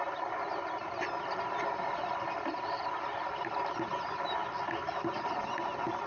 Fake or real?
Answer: real